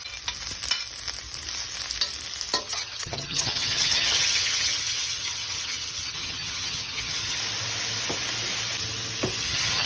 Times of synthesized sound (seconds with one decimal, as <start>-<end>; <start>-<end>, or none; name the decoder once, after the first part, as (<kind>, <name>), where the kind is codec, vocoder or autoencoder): 2.6-7.4 (vocoder, HiFi-GAN); 9.4-9.9